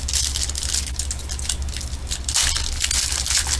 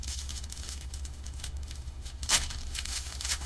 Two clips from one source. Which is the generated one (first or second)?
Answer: second